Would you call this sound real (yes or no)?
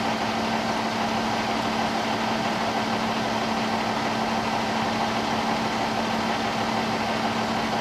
yes